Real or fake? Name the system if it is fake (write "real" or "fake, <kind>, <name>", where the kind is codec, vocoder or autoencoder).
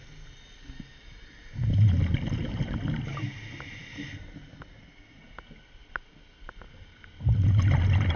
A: real